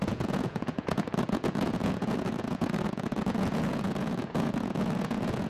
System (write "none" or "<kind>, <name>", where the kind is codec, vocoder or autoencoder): vocoder, Vocos